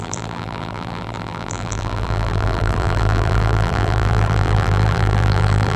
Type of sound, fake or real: fake